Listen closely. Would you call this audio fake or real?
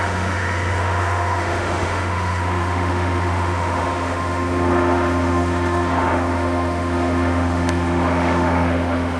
fake